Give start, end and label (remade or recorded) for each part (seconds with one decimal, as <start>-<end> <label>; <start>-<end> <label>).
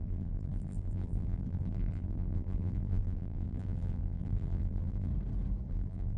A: 0.0-5.1 remade; 5.1-5.7 recorded; 5.7-6.2 remade